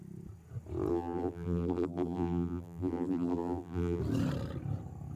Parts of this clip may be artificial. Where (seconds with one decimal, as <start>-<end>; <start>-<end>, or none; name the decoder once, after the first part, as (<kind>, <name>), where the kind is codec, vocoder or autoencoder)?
0.9-4.0 (vocoder, BigVGAN v2)